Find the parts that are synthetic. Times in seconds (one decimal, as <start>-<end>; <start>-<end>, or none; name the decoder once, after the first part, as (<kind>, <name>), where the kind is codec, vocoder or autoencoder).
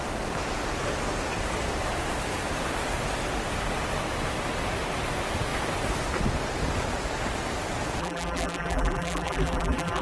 8.0-10.0 (vocoder, BigVGAN v2)